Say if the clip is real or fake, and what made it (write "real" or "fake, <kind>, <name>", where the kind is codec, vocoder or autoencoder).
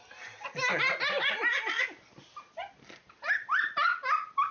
real